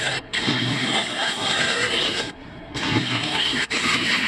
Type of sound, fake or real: fake